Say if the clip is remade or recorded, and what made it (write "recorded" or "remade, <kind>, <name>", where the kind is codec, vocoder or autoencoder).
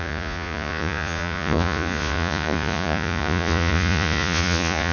remade, vocoder, Vocos